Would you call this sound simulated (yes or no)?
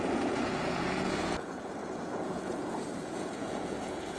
yes